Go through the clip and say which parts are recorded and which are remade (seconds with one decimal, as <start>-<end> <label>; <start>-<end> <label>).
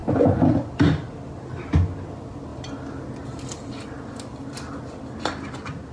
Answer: 0.0-5.9 recorded